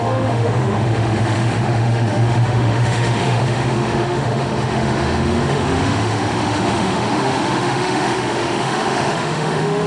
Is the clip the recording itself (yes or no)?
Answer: no